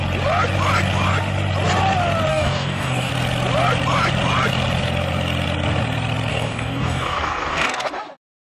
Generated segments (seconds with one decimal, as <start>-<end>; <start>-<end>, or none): 2.3-3.1; 6.3-7.9